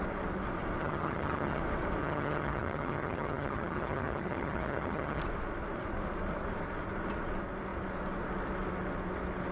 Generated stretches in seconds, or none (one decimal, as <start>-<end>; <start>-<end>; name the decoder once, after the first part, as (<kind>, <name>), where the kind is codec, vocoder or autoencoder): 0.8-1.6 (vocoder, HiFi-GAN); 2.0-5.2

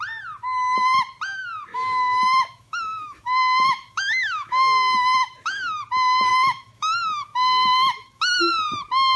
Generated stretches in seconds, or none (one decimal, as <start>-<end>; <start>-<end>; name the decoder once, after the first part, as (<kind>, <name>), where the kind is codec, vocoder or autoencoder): 1.7-5.8 (autoencoder, DAC-VAE); 6.3-8.5

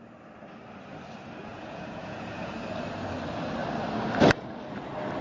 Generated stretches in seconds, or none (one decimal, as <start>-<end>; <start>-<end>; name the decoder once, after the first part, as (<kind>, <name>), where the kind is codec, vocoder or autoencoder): 1.5-2.5 (vocoder, Vocos)